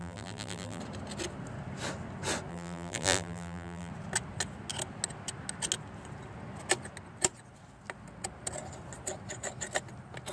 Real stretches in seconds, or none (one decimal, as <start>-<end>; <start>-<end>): 0.8-2.5; 3.9-10.3